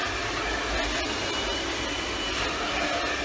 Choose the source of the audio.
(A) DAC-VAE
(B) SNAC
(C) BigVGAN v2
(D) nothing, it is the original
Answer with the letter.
D